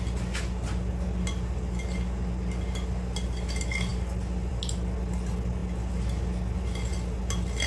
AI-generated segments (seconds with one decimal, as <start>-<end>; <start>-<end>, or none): none

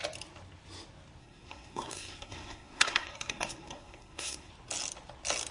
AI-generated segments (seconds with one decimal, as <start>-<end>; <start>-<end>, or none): 1.2-4.5

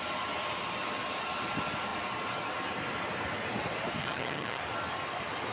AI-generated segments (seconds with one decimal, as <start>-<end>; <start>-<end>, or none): 4.0-4.6

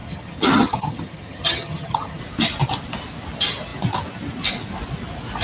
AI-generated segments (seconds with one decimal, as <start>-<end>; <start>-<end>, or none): 0.0-2.2